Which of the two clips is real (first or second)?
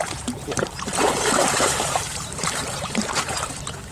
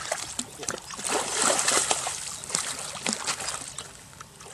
second